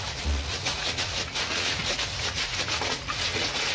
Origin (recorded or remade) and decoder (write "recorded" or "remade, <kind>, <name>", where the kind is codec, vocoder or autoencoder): remade, vocoder, Vocos